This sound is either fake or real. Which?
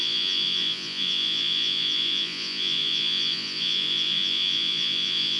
fake